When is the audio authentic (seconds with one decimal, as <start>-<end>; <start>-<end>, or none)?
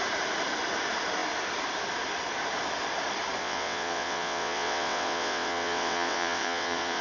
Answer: 0.0-3.4